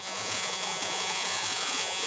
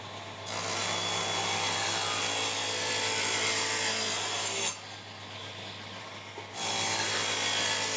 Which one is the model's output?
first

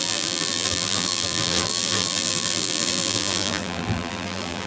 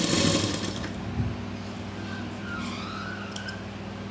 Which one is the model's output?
first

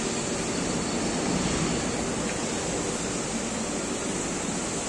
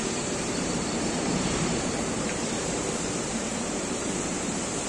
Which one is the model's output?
second